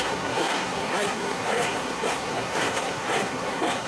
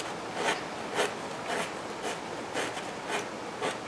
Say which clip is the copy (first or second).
first